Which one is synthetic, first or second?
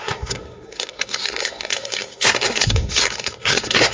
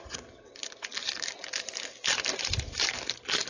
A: first